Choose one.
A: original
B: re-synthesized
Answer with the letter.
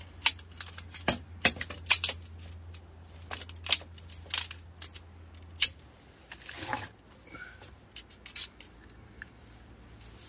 A